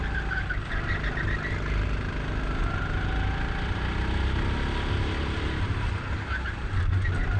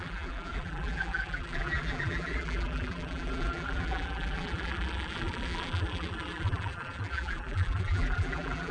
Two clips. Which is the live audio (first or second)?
first